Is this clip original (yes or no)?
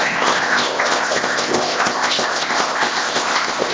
no